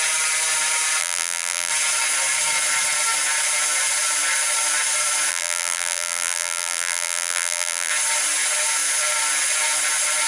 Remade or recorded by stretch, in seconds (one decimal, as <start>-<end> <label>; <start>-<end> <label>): 0.0-1.0 recorded; 1.0-1.7 remade; 1.7-5.3 recorded; 5.3-7.9 remade; 7.9-10.3 recorded

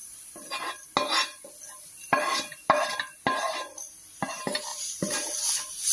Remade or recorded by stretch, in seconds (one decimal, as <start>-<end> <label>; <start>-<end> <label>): 0.0-0.6 remade; 0.6-4.7 recorded; 4.7-5.4 remade; 5.4-5.9 recorded

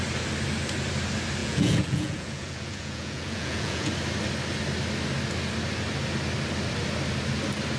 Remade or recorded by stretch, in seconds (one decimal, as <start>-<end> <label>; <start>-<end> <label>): 0.0-1.4 recorded; 1.4-3.9 remade; 3.9-7.8 recorded